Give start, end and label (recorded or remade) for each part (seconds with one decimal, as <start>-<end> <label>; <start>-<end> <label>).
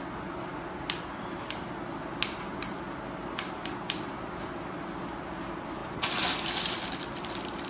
0.0-7.7 recorded